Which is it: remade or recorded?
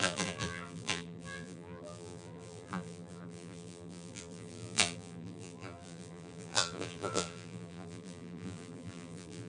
remade